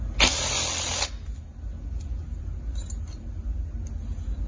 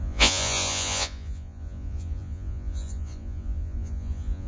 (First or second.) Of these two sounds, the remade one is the second